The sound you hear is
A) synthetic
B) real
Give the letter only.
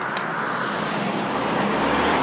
B